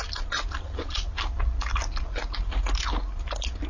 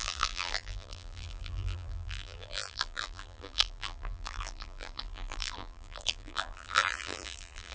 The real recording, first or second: first